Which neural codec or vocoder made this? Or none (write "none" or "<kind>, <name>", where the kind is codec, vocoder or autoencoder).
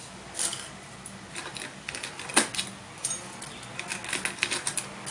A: none